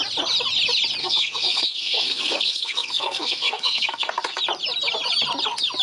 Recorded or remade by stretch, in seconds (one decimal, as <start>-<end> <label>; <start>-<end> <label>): 0.0-1.0 recorded; 1.0-4.4 remade; 4.4-5.8 recorded